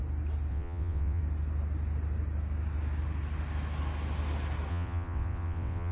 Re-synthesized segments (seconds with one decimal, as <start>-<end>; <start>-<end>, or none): 0.5-1.2; 4.7-5.9